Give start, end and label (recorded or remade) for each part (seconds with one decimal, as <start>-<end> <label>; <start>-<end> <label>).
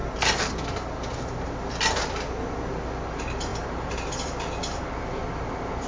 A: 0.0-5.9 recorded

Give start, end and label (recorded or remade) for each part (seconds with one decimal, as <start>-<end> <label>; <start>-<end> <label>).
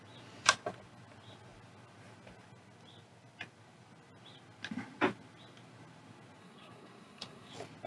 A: 0.0-6.4 recorded; 6.4-7.5 remade; 7.5-7.9 recorded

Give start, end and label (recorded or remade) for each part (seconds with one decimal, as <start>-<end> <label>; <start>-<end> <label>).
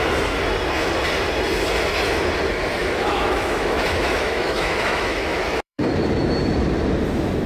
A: 0.0-2.8 recorded; 2.8-5.8 remade; 5.8-7.5 recorded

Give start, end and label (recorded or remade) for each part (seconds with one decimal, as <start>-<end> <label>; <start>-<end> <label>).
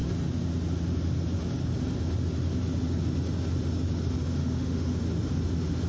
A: 0.0-4.4 recorded; 4.4-4.9 remade; 4.9-5.9 recorded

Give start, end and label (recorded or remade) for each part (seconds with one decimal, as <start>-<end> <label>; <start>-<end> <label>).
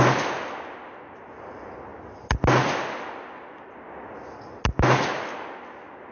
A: 0.0-6.1 recorded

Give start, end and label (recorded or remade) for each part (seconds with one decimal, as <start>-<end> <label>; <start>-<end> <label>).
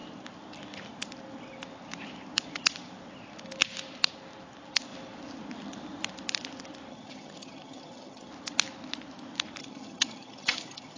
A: 0.0-6.9 recorded; 6.9-8.3 remade; 8.3-9.6 recorded; 9.6-11.0 remade